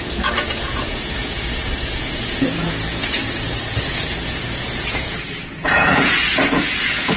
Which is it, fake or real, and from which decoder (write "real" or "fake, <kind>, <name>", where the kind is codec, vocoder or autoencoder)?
fake, vocoder, Vocos